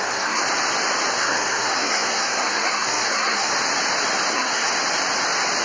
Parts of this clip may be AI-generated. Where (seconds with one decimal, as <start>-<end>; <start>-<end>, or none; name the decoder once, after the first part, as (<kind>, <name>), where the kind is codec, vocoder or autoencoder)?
0.0-0.4 (codec, SNAC); 1.1-3.5; 4.3-4.7